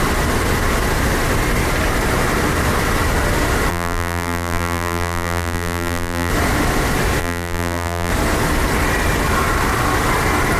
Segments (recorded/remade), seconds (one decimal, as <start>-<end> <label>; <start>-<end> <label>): 0.0-3.7 recorded; 3.7-6.3 remade; 6.3-7.2 recorded; 7.2-8.1 remade; 8.1-10.6 recorded